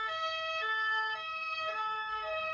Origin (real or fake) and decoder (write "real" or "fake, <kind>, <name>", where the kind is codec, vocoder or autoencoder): fake, codec, SNAC